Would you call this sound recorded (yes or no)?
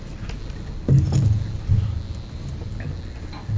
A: yes